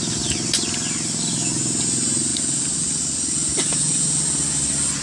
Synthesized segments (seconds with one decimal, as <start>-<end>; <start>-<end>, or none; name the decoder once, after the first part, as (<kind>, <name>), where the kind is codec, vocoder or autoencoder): none